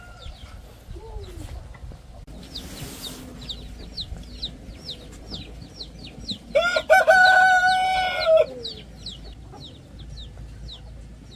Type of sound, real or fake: real